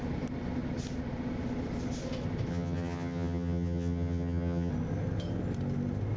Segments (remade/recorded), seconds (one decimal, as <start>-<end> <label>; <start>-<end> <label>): 0.0-2.5 recorded; 2.5-4.7 remade; 4.7-6.2 recorded